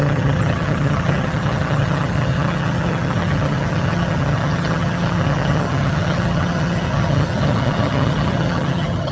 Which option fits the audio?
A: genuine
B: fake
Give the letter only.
B